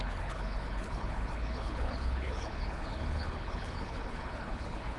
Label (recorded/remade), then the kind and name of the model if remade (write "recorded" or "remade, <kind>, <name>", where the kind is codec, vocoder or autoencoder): remade, codec, HILCodec